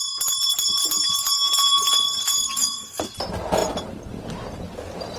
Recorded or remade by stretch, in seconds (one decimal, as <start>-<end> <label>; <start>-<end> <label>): 0.0-2.4 recorded; 2.4-3.0 remade; 3.0-5.2 recorded